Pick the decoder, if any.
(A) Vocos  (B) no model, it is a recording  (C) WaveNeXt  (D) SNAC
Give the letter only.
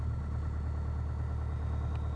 B